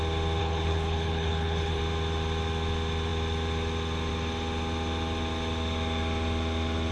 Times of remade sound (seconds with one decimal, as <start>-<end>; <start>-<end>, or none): 0.4-1.8